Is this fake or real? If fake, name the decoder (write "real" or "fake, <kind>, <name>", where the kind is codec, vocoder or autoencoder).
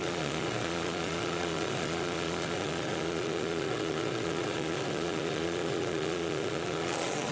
fake, vocoder, Vocos